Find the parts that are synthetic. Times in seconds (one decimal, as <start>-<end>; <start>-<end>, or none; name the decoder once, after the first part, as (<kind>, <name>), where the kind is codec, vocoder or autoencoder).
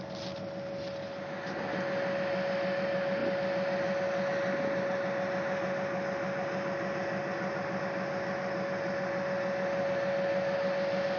none